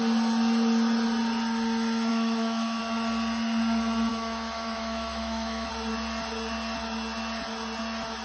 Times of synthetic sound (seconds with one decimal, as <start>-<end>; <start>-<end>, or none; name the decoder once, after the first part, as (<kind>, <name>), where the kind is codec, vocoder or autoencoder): 2.1-2.8 (autoencoder, DAC-VAE); 4.1-5.7